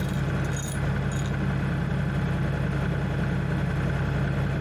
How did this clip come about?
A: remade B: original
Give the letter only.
B